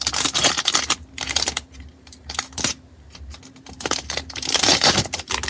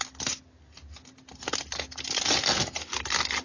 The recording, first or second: second